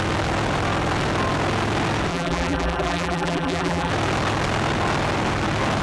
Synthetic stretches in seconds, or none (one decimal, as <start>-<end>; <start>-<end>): 2.1-3.9

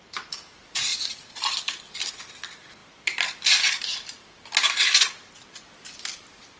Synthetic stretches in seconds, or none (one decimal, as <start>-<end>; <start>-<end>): 0.9-2.1; 2.8-5.3

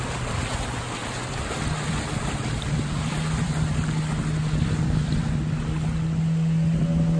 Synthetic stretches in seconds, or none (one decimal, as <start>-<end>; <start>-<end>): 1.0-3.7

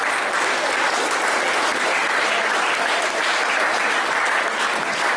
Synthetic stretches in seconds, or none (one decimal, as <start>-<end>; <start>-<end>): 2.0-5.2